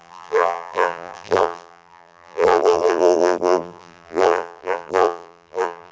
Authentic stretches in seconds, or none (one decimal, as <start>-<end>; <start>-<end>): none

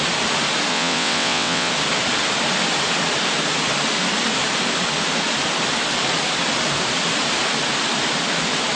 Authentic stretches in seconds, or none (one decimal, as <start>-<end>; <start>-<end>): 0.0-0.7; 1.7-8.8

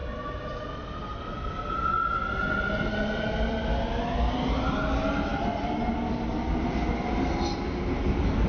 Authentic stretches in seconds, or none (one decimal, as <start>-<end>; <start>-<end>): 0.0-8.5

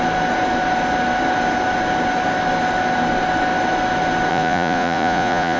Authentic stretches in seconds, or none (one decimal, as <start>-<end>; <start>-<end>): 0.0-4.3